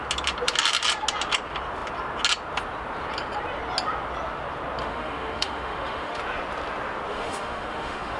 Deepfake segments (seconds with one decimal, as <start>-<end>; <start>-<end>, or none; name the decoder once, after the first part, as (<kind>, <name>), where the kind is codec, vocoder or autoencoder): 4.8-6.2 (autoencoder, DAC-VAE); 7.1-8.2